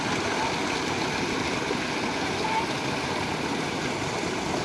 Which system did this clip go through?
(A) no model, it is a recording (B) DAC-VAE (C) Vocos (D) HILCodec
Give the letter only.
A